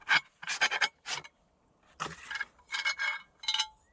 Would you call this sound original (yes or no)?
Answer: yes